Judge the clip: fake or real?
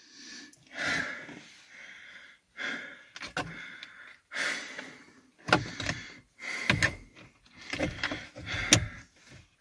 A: real